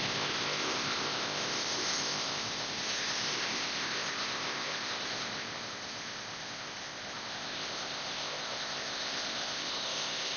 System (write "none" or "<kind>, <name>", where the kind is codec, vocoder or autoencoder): codec, ZipCodec